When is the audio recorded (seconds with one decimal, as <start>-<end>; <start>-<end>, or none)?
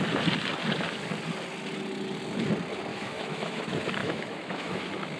0.0-2.9; 3.6-4.0; 4.8-5.2